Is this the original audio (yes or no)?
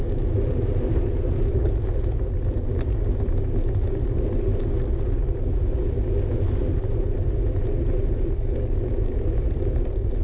yes